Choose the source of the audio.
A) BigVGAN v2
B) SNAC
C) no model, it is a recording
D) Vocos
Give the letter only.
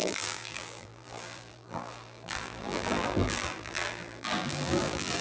A